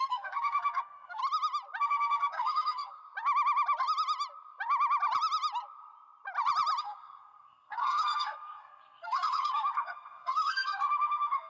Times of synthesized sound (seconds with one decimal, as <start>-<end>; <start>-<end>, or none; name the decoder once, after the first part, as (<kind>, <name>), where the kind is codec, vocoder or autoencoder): 0.0-1.2 (codec, SNAC); 1.8-3.0; 6.8-11.5